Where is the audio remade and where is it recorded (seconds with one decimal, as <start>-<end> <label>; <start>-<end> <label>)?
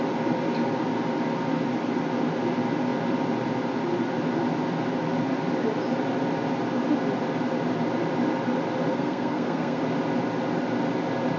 0.0-8.9 recorded; 8.9-9.8 remade; 9.8-11.4 recorded